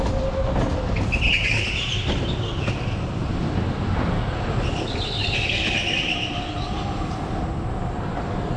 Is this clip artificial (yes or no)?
no